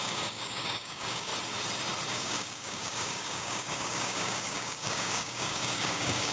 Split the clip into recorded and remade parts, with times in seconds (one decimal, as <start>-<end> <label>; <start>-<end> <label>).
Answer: 0.0-1.3 remade; 1.3-2.1 recorded; 2.1-6.3 remade